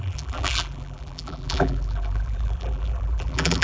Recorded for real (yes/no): no